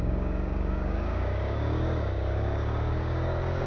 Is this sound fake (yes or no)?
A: yes